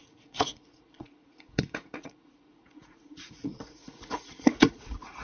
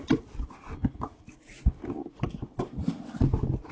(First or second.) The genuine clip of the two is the second